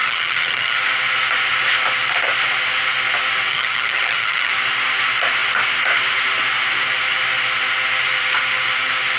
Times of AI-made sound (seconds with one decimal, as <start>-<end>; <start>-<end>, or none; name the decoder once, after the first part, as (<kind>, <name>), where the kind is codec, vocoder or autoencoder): 0.0-0.8 (vocoder, HiFi-GAN); 3.5-4.5